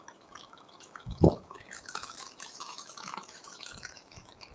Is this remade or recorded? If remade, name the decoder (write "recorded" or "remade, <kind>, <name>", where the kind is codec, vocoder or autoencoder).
remade, autoencoder, DAC-VAE